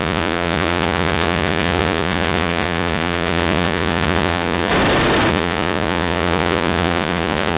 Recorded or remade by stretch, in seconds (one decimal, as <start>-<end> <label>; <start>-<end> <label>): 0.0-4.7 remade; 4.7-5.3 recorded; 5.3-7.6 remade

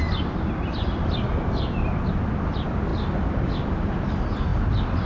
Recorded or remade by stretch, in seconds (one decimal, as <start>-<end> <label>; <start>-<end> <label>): 0.0-5.1 recorded

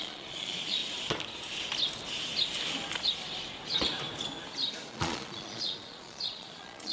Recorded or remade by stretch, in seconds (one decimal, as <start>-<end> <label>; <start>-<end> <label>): 0.0-0.8 remade; 0.8-4.9 recorded; 4.9-6.9 remade

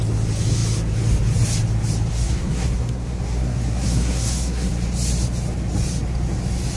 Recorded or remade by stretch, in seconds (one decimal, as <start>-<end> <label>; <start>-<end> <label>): 0.0-2.1 recorded; 2.1-4.7 remade; 4.7-6.8 recorded

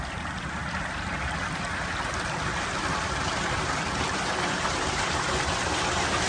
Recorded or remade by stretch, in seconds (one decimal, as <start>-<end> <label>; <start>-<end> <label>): 0.0-6.3 recorded

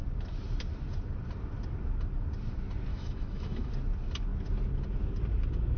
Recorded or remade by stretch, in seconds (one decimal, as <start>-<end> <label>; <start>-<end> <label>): 0.0-2.9 recorded; 2.9-3.7 remade; 3.7-5.8 recorded

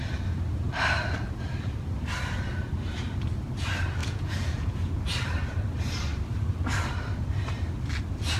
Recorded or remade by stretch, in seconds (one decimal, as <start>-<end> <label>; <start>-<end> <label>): 0.0-4.0 recorded; 4.0-4.9 remade; 4.9-8.4 recorded